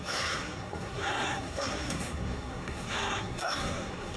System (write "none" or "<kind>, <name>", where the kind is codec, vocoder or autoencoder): codec, SNAC